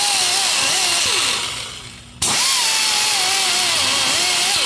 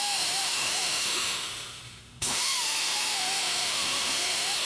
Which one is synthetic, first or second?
second